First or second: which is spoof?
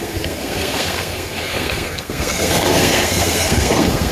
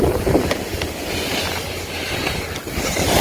first